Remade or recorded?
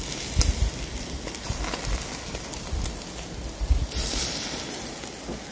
recorded